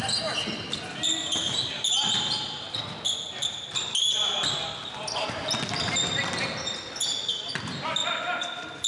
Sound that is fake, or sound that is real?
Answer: real